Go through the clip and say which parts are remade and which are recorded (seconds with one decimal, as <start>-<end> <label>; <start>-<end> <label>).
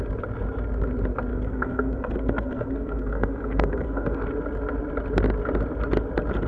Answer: 0.0-1.3 recorded; 1.3-4.2 remade; 4.2-6.5 recorded